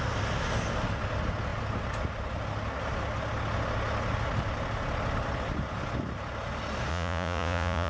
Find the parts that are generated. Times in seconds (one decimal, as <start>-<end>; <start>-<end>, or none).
6.9-7.9